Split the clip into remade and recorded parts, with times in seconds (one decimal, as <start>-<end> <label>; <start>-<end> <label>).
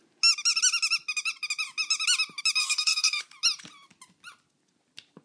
0.0-2.6 recorded; 2.6-3.2 remade; 3.2-5.2 recorded